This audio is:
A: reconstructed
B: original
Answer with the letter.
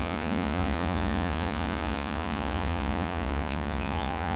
A